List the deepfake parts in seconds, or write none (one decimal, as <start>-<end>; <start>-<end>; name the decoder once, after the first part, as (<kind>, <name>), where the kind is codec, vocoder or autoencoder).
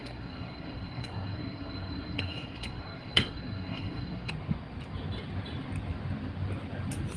0.0-4.3 (codec, SNAC)